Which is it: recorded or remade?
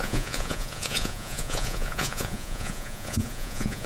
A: remade